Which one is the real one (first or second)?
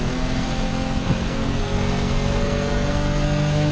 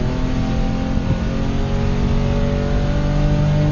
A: second